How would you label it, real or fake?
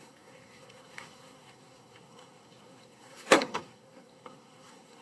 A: fake